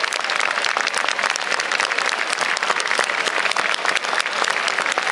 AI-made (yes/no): no